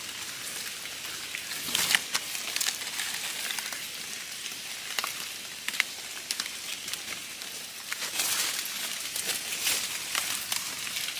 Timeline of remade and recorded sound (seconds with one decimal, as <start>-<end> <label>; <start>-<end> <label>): 0.0-11.2 recorded